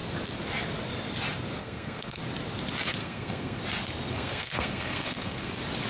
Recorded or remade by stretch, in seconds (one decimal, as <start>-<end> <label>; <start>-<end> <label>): 0.0-1.6 recorded; 1.6-2.2 remade; 2.2-3.0 recorded; 3.0-3.6 remade; 3.6-4.1 recorded; 4.1-5.5 remade; 5.5-5.9 recorded